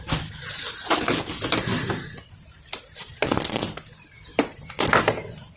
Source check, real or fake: real